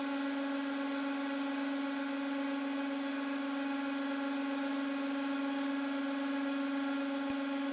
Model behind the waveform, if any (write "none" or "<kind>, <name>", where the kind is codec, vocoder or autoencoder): none